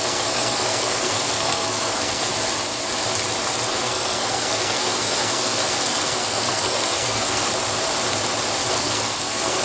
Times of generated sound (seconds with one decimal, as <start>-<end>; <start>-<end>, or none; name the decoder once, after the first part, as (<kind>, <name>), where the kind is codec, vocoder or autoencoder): 0.0-2.3 (codec, SNAC); 3.8-7.5; 8.7-9.6